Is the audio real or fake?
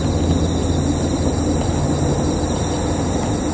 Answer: real